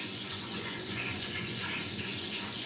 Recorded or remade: remade